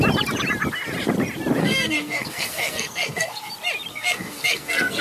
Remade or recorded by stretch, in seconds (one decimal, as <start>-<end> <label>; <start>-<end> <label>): 0.0-1.6 recorded; 1.6-3.5 remade; 3.5-3.9 recorded; 3.9-5.0 remade